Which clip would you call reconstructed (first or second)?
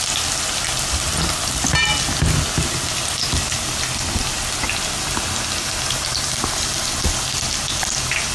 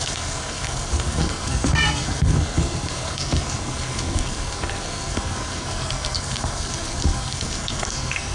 second